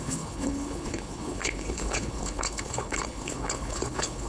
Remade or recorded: remade